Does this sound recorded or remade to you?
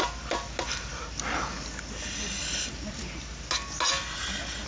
recorded